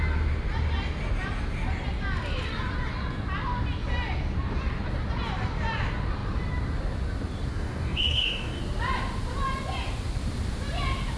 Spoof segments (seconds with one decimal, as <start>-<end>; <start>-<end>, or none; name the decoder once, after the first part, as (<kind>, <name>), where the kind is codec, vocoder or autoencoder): 7.5-8.6 (codec, DAC)